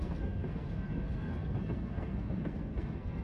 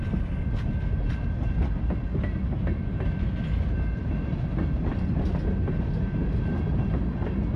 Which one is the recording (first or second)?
second